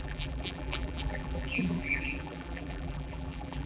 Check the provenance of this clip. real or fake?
fake